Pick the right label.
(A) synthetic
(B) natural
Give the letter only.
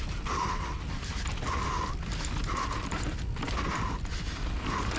B